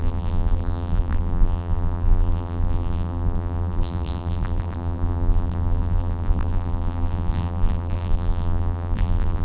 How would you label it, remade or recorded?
remade